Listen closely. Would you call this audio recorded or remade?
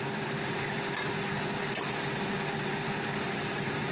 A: recorded